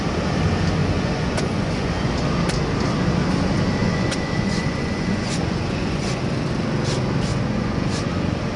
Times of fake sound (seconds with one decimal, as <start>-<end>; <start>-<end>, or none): 0.8-2.1; 3.8-6.2; 7.3-8.1